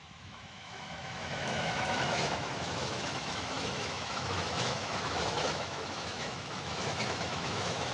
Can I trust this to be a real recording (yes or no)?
no